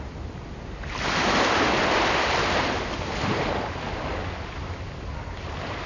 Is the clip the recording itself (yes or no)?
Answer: yes